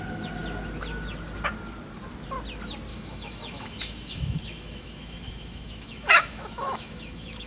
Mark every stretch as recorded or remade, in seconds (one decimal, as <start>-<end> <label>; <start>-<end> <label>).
0.0-2.9 recorded; 2.9-7.5 remade